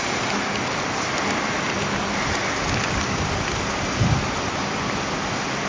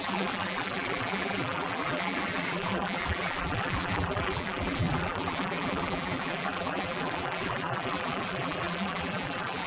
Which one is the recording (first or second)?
first